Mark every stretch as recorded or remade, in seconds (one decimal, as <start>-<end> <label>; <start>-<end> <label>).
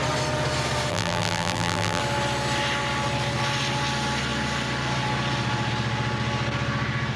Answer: 0.0-0.9 recorded; 0.9-2.0 remade; 2.0-7.2 recorded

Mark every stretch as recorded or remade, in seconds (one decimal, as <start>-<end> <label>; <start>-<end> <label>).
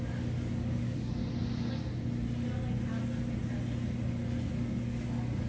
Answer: 0.0-1.2 remade; 1.2-4.5 recorded; 4.5-5.5 remade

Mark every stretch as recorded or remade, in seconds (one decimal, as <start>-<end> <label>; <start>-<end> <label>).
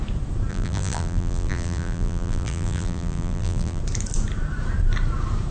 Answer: 0.0-0.5 recorded; 0.5-3.8 remade; 3.8-5.5 recorded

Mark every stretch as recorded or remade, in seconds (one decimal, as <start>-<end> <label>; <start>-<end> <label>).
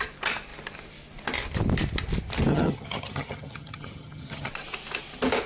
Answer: 0.0-2.5 recorded; 2.5-4.5 remade; 4.5-5.5 recorded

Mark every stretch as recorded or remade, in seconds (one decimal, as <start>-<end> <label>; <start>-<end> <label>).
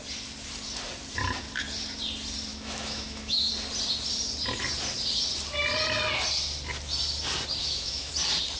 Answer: 0.0-2.5 recorded; 2.5-3.5 remade; 3.5-7.6 recorded; 7.6-8.1 remade; 8.1-8.6 recorded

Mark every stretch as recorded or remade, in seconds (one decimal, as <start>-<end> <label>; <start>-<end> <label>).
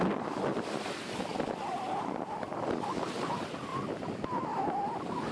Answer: 0.0-5.3 recorded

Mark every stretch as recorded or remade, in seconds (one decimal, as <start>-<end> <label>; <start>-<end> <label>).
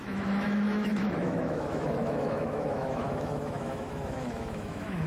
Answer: 0.0-5.1 remade